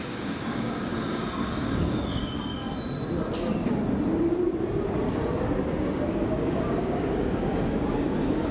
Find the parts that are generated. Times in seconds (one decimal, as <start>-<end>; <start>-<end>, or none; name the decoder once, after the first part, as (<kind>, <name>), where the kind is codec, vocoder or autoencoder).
0.0-2.2 (codec, DAC); 6.2-8.5